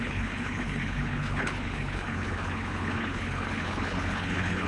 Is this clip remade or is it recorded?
remade